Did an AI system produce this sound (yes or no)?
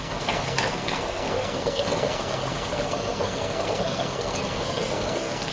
yes